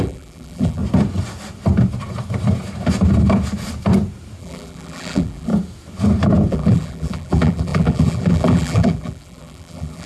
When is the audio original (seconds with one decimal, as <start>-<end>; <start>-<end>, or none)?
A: 0.8-4.4; 5.5-6.5